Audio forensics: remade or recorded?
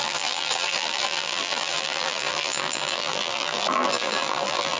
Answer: remade